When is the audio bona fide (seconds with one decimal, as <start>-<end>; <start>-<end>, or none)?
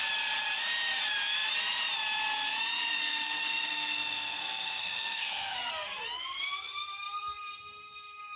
0.0-3.0; 5.7-8.4